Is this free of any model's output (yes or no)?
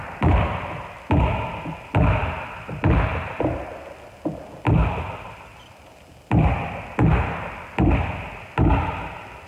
yes